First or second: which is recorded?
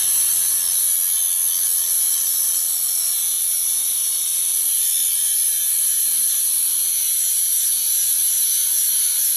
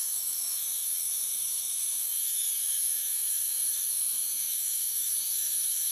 first